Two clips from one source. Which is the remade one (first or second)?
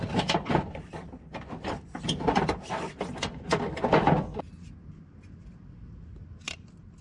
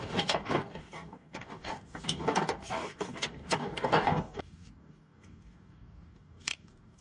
second